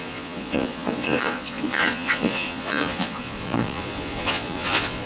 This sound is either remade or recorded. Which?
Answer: remade